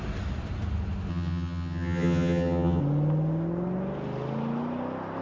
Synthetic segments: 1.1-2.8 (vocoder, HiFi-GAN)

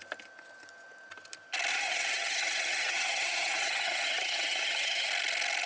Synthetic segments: 1.7-5.1 (vocoder, HiFi-GAN)

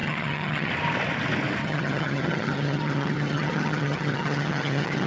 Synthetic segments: 0.0-0.7 (vocoder, HiFi-GAN); 1.6-5.1

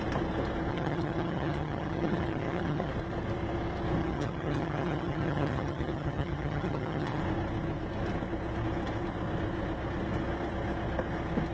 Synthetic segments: 0.7-2.9 (vocoder, HiFi-GAN); 4.0-7.2

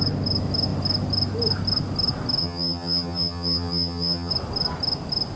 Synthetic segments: 2.4-4.3 (vocoder, HiFi-GAN)